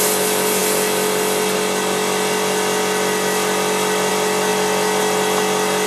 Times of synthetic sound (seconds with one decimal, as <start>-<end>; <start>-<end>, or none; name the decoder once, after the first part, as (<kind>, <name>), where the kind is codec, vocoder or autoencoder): none